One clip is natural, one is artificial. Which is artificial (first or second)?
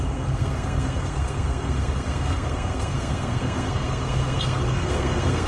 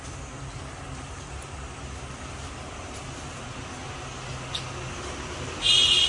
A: first